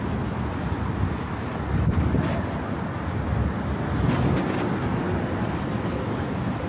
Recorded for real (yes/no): yes